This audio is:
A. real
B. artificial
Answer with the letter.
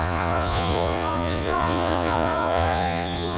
B